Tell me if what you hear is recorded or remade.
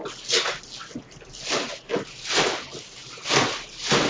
recorded